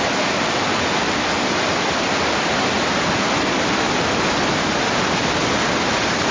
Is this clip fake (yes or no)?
no